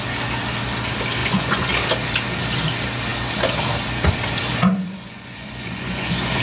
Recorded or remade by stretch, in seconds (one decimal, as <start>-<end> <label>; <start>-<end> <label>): 0.0-1.2 recorded; 1.2-1.7 remade; 1.7-4.5 recorded; 4.5-6.4 remade